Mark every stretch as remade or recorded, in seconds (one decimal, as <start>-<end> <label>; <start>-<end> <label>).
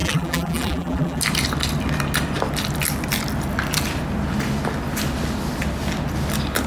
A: 0.0-1.2 remade; 1.2-6.7 recorded